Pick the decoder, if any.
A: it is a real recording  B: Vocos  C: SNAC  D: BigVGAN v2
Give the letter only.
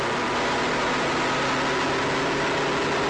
A